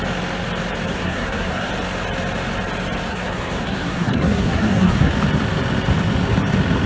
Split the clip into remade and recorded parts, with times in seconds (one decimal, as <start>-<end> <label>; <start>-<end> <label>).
0.0-0.9 recorded; 0.9-1.7 remade; 1.7-3.1 recorded; 3.1-5.1 remade; 5.1-6.9 recorded